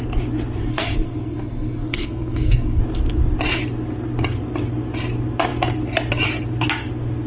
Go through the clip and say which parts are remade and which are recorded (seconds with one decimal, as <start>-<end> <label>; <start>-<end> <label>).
0.0-0.7 recorded; 0.7-2.8 remade; 2.8-7.3 recorded